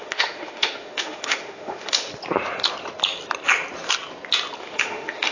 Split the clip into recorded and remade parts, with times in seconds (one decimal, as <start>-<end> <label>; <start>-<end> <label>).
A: 0.0-2.1 remade; 2.1-4.6 recorded; 4.6-5.3 remade